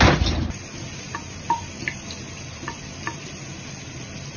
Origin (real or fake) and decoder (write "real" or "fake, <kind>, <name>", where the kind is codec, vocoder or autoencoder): real